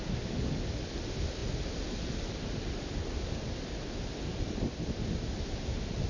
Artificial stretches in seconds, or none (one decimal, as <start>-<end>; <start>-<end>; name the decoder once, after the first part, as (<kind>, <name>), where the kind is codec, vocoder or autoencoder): none

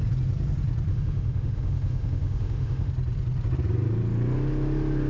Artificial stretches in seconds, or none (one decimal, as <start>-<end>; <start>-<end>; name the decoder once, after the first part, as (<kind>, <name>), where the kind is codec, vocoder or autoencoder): 0.9-2.9 (autoencoder, DAC-VAE)

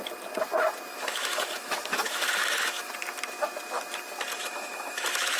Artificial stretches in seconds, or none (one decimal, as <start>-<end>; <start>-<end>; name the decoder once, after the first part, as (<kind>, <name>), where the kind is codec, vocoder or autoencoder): 0.9-2.9 (autoencoder, DAC-VAE); 4.4-5.4

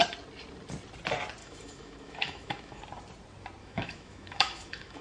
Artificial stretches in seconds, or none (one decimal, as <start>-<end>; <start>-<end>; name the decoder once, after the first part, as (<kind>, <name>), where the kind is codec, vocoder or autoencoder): 1.4-2.8 (autoencoder, DAC-VAE); 3.6-5.0

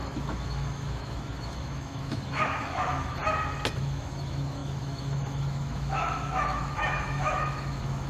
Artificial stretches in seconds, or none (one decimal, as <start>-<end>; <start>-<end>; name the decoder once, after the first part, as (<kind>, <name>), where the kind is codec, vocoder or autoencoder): 0.0-3.2 (autoencoder, DAC-VAE); 3.8-8.1